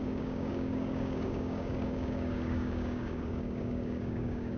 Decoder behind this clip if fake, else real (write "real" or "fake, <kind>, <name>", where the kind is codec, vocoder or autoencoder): fake, codec, DAC